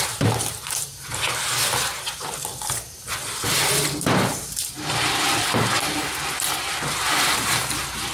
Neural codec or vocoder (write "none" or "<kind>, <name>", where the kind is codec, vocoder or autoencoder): vocoder, BigVGAN v2